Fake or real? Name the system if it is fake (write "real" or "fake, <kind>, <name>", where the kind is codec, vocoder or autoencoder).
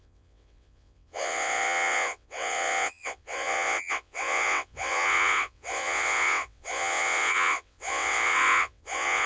fake, vocoder, WaveNeXt